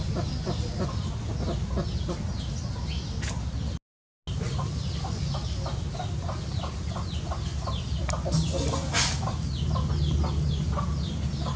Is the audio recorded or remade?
recorded